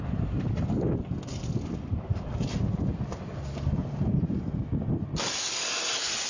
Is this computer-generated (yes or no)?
no